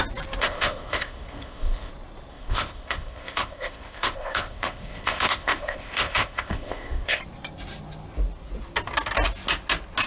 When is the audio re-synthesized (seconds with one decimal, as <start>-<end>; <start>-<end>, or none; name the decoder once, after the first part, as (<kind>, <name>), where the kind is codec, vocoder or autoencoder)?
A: 0.4-1.9 (codec, ZipCodec); 2.3-7.2

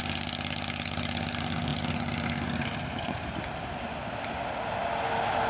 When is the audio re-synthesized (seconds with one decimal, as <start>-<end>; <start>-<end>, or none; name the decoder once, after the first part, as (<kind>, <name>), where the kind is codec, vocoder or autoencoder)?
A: none

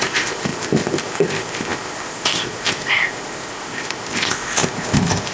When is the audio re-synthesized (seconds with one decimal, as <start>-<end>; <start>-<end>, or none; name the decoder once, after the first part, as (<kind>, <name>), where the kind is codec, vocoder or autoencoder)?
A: 0.0-5.3 (codec, ZipCodec)

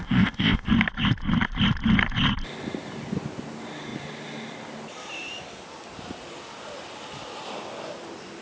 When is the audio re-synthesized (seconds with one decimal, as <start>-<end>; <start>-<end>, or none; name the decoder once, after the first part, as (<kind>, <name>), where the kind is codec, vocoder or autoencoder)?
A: 0.0-0.7 (codec, ZipCodec)

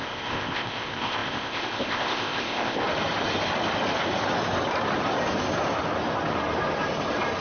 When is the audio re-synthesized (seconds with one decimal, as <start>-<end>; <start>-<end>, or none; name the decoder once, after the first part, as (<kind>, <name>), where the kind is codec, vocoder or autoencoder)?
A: 0.0-2.8 (codec, ZipCodec)